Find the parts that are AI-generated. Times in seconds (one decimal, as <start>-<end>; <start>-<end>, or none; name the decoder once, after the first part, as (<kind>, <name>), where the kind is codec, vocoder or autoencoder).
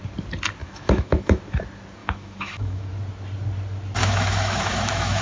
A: 0.6-1.4 (autoencoder, DAC-VAE); 2.0-2.9; 4.0-5.2